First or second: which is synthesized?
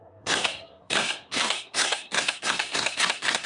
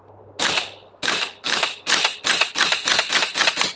first